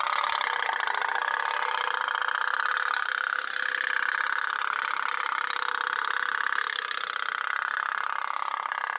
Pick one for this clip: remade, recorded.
recorded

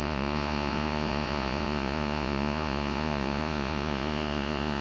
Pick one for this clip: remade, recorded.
remade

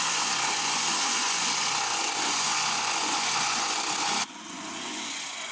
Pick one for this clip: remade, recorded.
remade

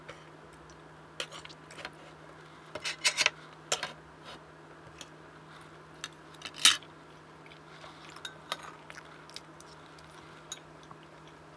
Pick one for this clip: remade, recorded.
recorded